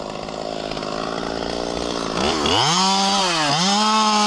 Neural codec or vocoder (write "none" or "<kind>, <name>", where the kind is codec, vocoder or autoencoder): none